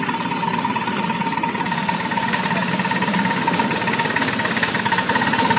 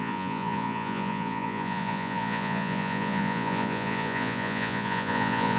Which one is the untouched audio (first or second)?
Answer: first